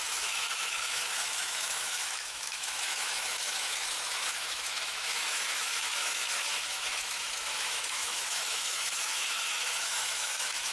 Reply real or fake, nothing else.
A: fake